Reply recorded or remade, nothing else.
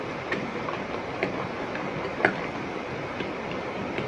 recorded